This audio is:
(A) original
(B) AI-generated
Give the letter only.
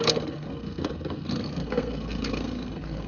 B